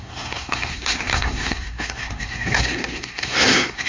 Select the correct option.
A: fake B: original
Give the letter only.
A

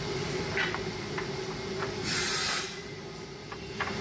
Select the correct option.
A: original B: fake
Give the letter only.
B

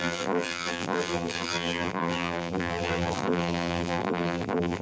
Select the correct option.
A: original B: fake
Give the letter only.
B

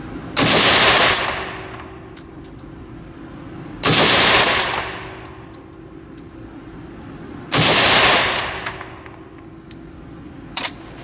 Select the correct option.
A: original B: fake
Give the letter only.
A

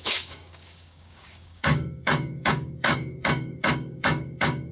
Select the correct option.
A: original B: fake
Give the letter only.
B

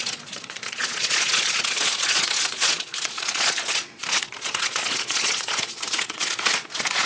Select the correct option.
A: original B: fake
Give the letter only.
B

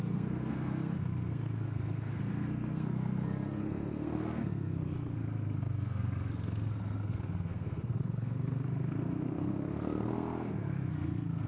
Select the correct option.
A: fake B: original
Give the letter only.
A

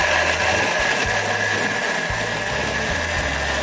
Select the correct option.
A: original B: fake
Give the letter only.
A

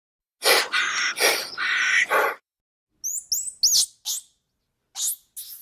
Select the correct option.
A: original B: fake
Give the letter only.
A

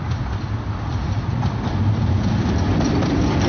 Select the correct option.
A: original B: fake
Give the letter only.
A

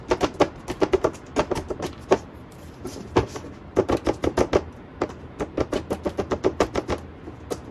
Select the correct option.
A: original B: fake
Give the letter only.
A